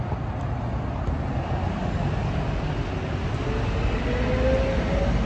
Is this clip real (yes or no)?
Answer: yes